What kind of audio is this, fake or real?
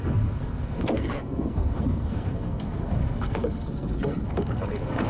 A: fake